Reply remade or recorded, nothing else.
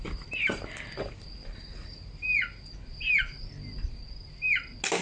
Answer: recorded